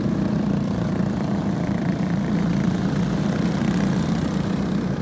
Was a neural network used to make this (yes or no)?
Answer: yes